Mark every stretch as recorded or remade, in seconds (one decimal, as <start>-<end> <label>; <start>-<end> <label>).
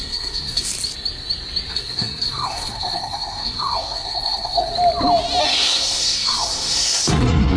0.0-0.7 remade; 0.7-1.7 recorded; 1.7-4.7 remade; 4.7-5.4 recorded; 5.4-7.6 remade